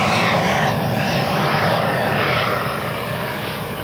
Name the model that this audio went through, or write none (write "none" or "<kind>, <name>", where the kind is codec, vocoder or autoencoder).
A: codec, DAC